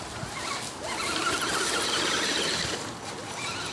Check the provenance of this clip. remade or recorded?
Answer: recorded